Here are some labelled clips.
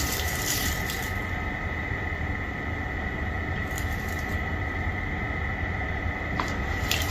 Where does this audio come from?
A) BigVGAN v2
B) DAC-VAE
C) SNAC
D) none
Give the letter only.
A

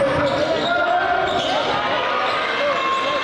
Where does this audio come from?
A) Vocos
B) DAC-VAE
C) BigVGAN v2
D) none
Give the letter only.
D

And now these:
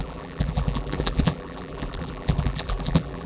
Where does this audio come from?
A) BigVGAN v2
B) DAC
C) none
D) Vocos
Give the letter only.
A